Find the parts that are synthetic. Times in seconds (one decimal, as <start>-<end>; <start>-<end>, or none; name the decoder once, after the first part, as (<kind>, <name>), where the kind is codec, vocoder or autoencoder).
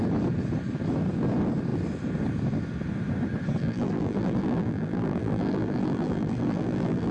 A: 3.6-7.1 (vocoder, BigVGAN v2)